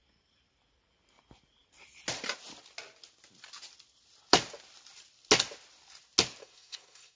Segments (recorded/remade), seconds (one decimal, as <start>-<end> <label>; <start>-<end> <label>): 0.0-6.4 recorded; 6.4-7.2 remade